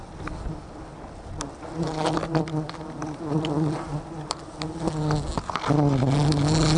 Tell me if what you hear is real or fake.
real